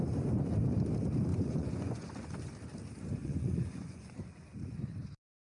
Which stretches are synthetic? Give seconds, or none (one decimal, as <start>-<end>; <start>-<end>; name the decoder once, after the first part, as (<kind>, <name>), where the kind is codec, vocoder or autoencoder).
1.3-2.1 (vocoder, Vocos); 3.2-4.1